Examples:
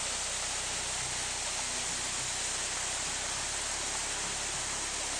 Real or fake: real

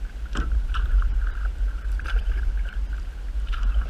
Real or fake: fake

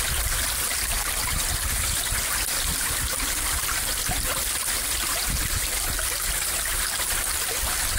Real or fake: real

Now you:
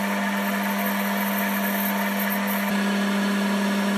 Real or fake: real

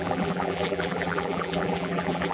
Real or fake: fake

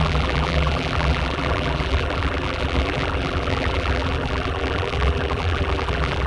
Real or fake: fake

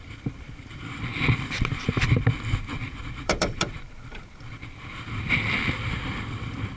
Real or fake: fake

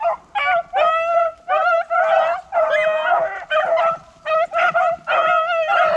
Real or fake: real